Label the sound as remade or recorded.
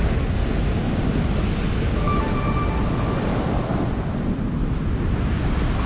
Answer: recorded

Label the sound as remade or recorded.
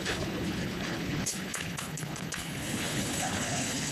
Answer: remade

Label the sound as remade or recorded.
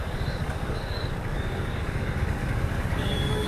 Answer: remade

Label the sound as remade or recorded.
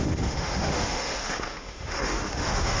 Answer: remade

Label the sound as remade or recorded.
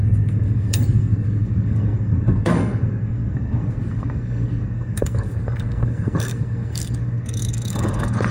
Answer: remade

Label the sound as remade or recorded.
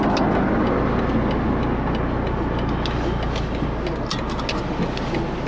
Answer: recorded